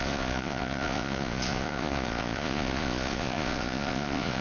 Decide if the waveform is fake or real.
fake